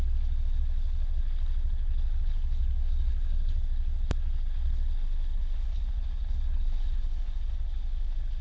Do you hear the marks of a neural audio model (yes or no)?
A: yes